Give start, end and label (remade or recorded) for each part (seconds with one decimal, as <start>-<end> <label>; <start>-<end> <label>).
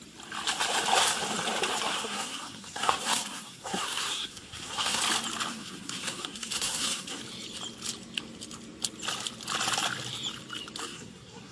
0.0-1.9 recorded; 1.9-5.0 remade; 5.0-5.5 recorded; 5.5-7.2 remade; 7.2-10.8 recorded; 10.8-11.5 remade